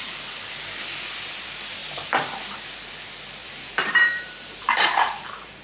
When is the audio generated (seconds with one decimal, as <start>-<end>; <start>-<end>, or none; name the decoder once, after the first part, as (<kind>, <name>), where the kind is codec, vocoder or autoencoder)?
1.8-2.4 (vocoder, BigVGAN v2); 3.4-5.6